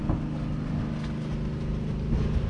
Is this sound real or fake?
real